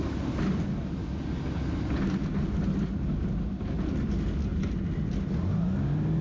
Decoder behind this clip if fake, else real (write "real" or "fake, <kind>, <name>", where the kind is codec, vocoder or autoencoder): real